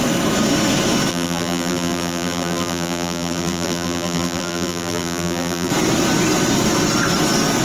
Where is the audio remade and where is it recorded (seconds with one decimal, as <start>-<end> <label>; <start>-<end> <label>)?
0.0-1.1 recorded; 1.1-5.7 remade; 5.7-7.6 recorded